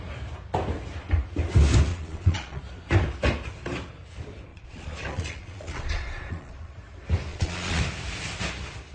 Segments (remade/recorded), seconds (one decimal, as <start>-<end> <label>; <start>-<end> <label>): 0.0-1.9 recorded; 1.9-2.6 remade; 2.6-4.5 recorded; 4.5-6.8 remade; 6.8-7.3 recorded; 7.3-7.8 remade; 7.8-8.9 recorded